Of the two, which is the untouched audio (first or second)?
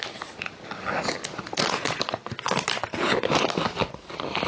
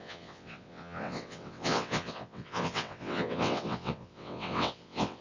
first